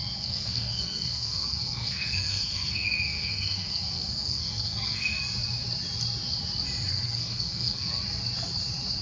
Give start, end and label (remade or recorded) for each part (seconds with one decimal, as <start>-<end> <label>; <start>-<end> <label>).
0.0-5.2 remade; 5.2-6.9 recorded; 6.9-8.0 remade; 8.0-9.0 recorded